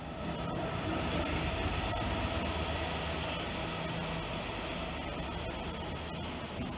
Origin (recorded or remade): recorded